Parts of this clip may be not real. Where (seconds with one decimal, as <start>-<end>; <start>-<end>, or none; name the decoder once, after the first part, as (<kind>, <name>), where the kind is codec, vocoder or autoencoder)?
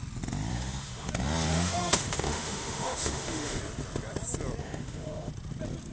0.5-1.1 (autoencoder, DAC-VAE); 1.5-3.6; 4.6-5.3